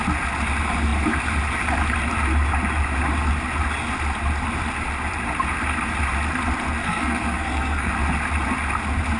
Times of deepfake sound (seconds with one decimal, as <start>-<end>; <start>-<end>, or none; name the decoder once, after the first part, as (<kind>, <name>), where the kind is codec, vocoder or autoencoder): 6.8-7.9 (codec, SNAC)